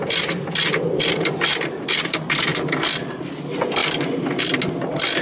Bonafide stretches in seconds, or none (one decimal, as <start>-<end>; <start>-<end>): 0.0-5.2